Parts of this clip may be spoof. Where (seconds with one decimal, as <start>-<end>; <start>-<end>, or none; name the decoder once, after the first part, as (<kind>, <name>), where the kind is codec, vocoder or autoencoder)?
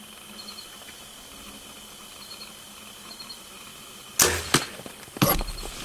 none